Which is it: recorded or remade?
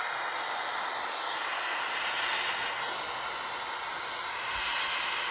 recorded